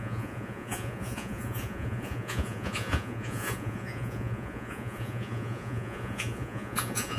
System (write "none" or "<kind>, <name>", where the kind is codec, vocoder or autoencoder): vocoder, Vocos